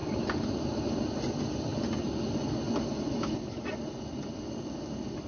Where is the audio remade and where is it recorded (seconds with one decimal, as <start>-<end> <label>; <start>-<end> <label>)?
0.0-5.3 recorded